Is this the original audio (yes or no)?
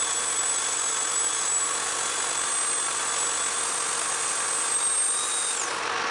yes